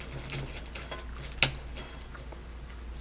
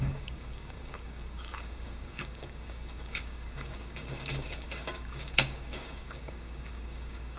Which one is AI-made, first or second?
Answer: second